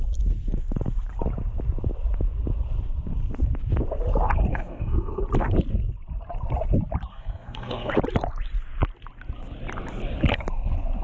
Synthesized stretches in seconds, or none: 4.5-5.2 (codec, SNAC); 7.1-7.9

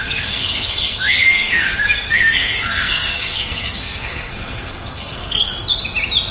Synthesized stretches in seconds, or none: 0.0-5.5 (codec, SNAC)

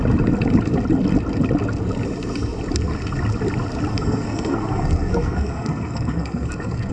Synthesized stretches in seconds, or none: 3.9-6.9 (codec, SNAC)

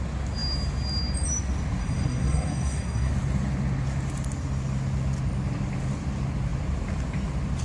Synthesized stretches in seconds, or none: 1.8-3.1 (codec, SNAC)

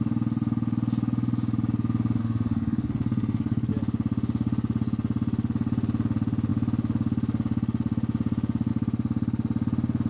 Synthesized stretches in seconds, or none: 2.2-3.7 (codec, SNAC)